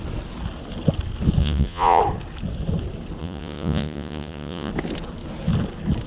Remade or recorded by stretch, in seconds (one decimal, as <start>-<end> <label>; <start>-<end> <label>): 0.0-1.4 recorded; 1.4-2.0 remade; 2.0-3.2 recorded; 3.2-4.7 remade; 4.7-6.1 recorded